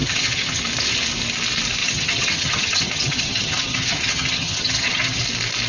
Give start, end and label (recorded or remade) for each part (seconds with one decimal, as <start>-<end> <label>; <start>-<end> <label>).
0.0-0.6 remade; 0.6-1.8 recorded; 1.8-5.2 remade; 5.2-5.7 recorded